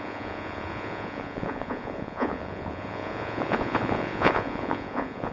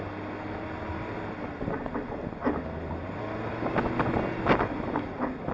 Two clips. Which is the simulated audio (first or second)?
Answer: first